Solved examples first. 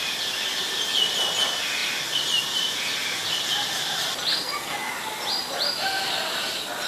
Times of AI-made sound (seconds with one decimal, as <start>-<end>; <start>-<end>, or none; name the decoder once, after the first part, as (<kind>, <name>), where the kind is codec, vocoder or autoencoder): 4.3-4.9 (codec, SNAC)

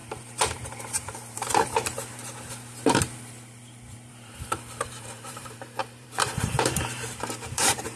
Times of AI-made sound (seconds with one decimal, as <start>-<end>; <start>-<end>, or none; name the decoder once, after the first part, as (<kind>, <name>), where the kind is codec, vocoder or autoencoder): 0.0-2.2 (vocoder, BigVGAN v2); 4.1-8.0

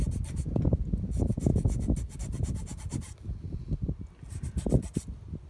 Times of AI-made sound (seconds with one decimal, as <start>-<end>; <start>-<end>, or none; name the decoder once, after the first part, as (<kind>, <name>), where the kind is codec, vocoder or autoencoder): none